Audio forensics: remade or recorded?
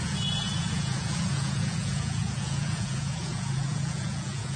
remade